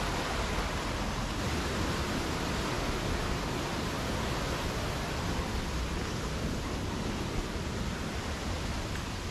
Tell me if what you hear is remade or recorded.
recorded